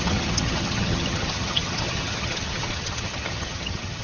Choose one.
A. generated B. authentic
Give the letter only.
A